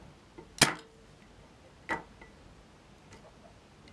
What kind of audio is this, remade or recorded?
recorded